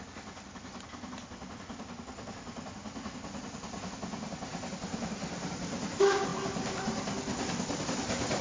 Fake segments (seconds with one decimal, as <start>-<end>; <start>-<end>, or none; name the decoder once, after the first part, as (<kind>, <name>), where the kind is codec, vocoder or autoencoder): none